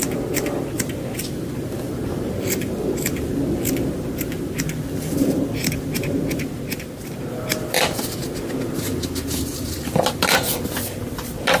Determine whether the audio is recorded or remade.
recorded